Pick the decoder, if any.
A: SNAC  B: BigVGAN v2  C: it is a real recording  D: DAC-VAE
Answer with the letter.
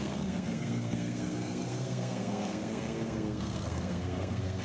A